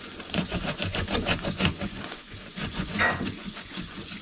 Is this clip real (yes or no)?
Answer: no